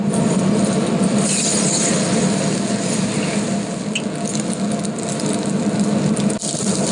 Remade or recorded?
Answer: recorded